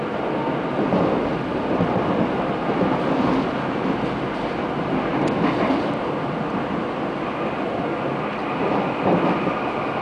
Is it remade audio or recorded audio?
recorded